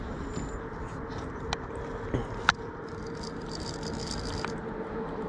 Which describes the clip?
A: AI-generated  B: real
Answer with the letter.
B